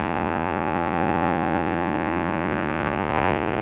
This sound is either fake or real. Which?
fake